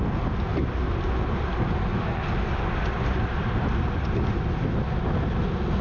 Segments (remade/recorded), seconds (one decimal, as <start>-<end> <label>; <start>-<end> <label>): 0.0-5.8 recorded